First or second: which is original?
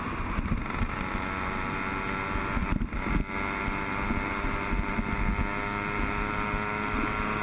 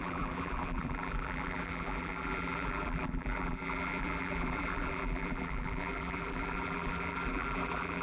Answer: first